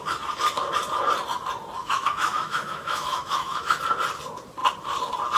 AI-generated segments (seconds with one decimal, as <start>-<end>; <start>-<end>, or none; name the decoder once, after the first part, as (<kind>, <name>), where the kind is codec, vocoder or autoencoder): 1.8-3.8 (autoencoder, DAC-VAE)